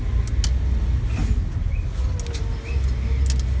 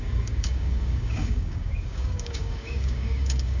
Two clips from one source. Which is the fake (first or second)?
second